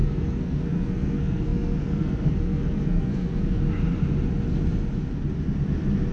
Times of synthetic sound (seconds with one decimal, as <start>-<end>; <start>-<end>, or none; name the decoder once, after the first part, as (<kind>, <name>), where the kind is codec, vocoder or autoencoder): 0.0-3.6 (codec, SNAC)